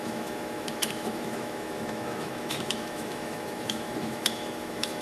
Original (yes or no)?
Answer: no